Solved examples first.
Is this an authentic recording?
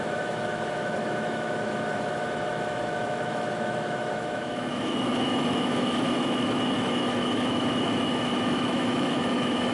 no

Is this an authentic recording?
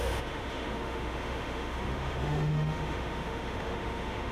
no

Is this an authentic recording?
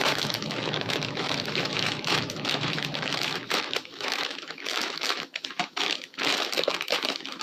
no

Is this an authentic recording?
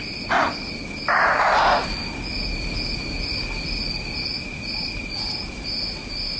yes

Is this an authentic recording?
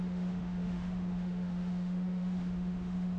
no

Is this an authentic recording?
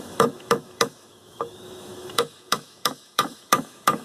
no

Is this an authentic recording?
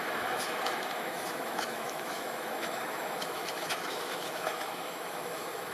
no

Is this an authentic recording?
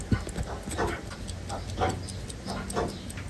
yes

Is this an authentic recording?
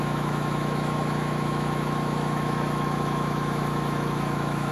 no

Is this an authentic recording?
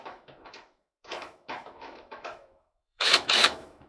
no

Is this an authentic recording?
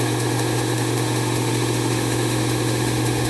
no